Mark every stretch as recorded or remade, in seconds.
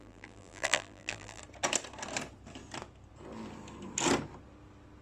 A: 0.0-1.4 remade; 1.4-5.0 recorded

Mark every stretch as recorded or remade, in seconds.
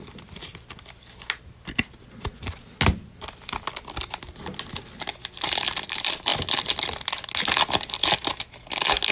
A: 0.0-9.1 recorded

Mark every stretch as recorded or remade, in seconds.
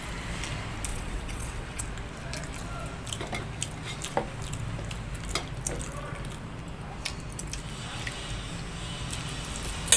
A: 0.0-0.9 recorded; 0.9-1.8 remade; 1.8-10.0 recorded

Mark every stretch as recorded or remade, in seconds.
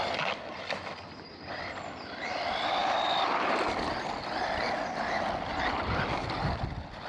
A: 0.0-2.8 recorded; 2.8-4.5 remade; 4.5-7.1 recorded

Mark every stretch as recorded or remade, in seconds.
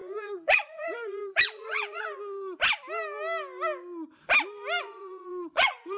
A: 0.0-2.6 remade; 2.6-4.8 recorded; 4.8-6.0 remade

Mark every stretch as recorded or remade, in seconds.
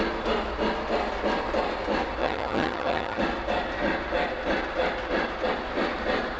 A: 0.0-2.2 recorded; 2.2-3.2 remade; 3.2-6.4 recorded